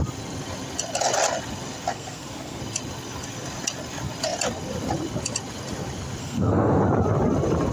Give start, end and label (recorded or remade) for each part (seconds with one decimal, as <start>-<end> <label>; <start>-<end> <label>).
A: 0.0-1.9 recorded; 1.9-2.6 remade; 2.6-6.2 recorded; 6.2-6.8 remade; 6.8-7.7 recorded